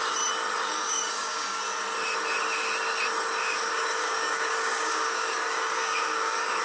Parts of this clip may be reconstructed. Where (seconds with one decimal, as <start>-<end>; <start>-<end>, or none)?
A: 0.7-1.6; 3.4-6.6